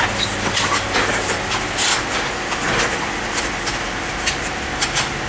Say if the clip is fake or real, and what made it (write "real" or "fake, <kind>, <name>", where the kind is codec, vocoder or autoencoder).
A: real